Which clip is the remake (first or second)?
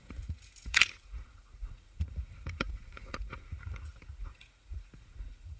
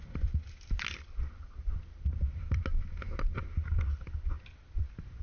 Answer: first